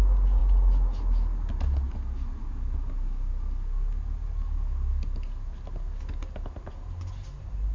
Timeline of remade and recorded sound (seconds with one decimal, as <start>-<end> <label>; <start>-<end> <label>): 0.0-7.7 recorded